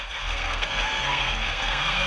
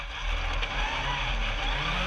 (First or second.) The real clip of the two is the second